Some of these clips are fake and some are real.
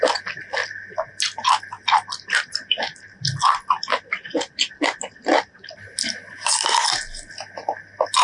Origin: real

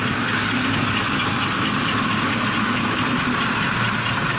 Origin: real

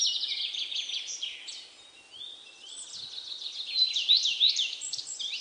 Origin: real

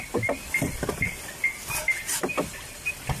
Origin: real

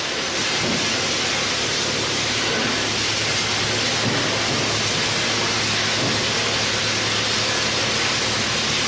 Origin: real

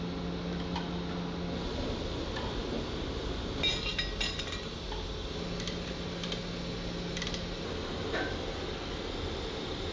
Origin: real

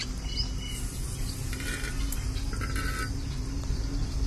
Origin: real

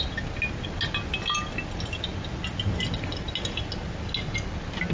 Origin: real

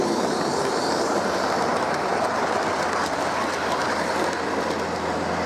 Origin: fake